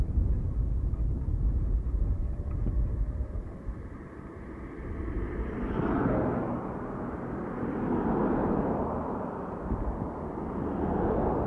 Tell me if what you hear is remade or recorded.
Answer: recorded